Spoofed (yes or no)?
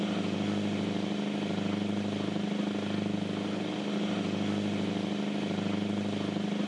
no